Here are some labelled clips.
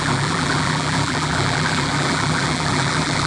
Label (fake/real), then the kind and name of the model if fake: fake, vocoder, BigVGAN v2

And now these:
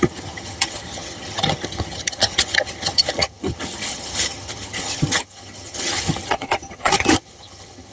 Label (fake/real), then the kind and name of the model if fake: fake, vocoder, HiFi-GAN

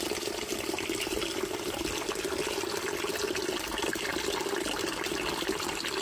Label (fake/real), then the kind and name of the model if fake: real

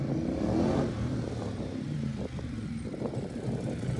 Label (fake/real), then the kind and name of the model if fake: fake, vocoder, BigVGAN v2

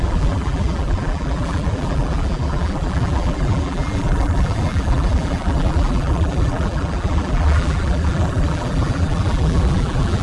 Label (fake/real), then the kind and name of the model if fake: fake, vocoder, BigVGAN v2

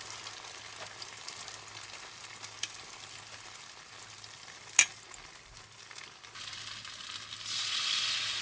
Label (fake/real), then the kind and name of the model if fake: real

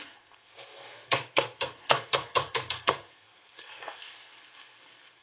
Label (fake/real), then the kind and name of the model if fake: fake, codec, SNAC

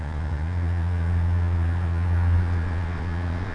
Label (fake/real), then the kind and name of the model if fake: fake, vocoder, Vocos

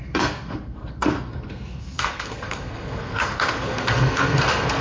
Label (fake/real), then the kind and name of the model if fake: fake, codec, SNAC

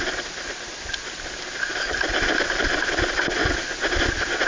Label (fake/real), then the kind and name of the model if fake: real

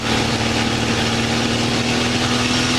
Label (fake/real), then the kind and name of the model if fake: real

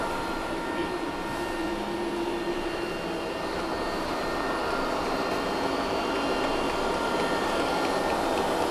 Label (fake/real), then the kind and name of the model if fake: real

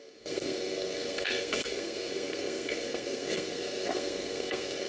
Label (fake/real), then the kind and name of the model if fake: fake, codec, SNAC